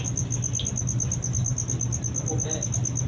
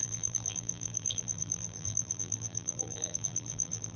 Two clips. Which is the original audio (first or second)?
first